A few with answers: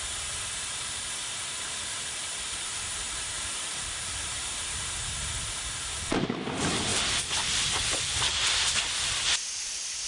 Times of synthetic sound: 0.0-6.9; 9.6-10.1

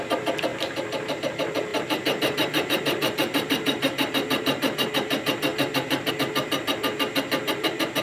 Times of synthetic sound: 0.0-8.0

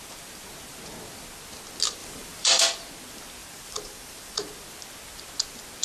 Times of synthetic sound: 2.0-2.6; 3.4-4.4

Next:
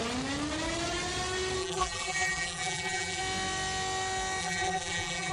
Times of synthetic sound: 1.6-3.2; 4.4-5.3